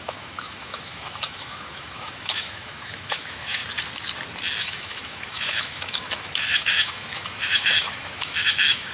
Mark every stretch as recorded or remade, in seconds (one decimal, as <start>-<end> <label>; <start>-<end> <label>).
0.0-3.6 remade; 3.6-4.6 recorded; 4.6-8.9 remade